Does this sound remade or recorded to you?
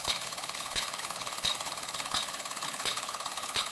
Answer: remade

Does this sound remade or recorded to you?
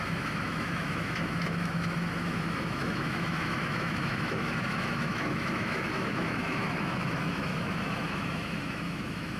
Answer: remade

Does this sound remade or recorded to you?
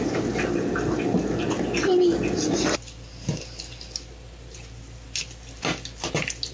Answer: recorded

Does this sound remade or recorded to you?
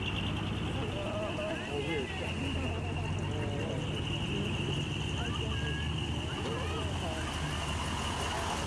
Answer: recorded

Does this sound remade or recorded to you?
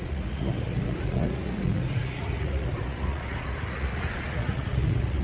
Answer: remade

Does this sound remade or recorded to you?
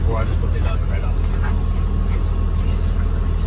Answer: recorded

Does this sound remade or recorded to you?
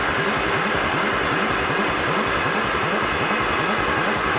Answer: recorded